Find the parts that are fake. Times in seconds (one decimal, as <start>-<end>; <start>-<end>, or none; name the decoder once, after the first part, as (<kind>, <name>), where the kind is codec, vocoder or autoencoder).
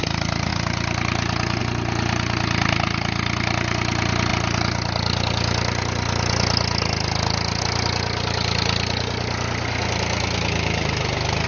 none